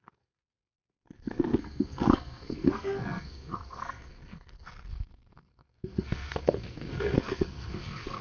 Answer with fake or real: fake